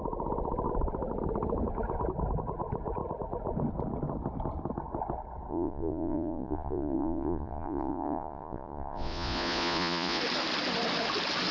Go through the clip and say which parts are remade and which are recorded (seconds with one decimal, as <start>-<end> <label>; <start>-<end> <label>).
0.0-5.5 recorded; 5.5-10.2 remade; 10.2-11.5 recorded